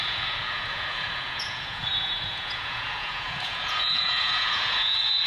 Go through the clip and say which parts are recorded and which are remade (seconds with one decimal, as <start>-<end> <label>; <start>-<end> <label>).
0.0-5.3 remade